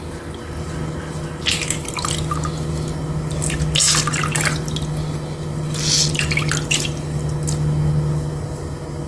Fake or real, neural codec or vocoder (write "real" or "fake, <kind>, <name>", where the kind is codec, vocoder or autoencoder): real